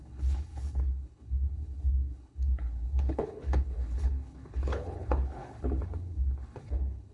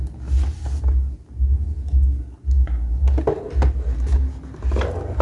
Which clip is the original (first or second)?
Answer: second